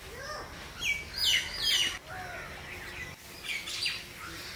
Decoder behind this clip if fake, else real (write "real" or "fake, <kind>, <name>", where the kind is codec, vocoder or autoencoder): real